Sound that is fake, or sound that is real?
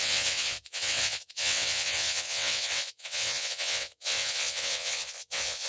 fake